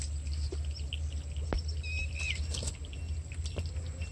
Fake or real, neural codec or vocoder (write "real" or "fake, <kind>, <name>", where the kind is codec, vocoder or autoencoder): real